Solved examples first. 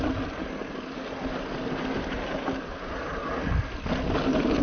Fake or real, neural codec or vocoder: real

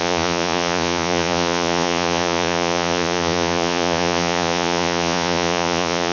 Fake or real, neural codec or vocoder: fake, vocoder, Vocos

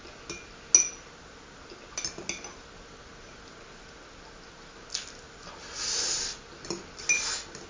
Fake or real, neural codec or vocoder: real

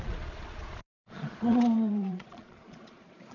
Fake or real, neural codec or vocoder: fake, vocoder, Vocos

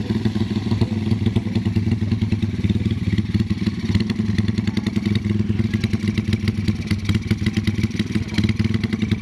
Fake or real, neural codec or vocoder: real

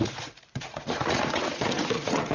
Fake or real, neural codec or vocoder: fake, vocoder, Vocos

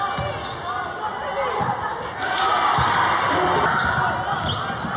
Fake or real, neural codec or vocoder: real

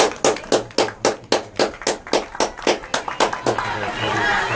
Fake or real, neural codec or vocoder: real